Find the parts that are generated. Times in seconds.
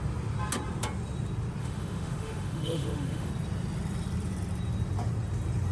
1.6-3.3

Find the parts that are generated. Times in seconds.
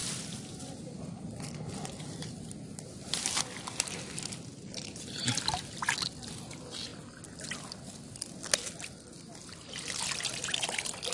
0.0-5.2; 6.9-7.5